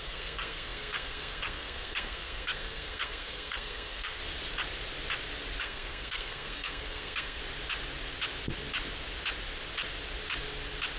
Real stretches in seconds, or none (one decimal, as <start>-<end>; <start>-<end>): 4.2-5.6; 7.4-11.0

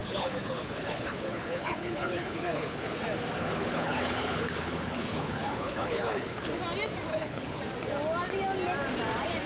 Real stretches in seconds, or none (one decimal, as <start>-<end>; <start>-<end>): 3.0-3.4; 6.5-7.1; 7.6-9.5

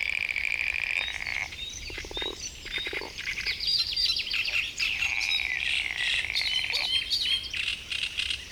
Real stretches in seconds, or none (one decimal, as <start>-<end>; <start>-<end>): 0.0-1.3; 5.1-8.5

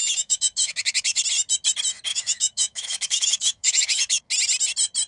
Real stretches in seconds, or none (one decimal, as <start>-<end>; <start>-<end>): 1.2-2.1; 4.2-5.1